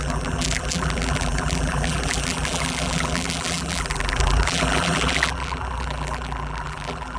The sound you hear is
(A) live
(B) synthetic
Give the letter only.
B